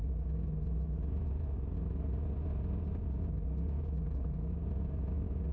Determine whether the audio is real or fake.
real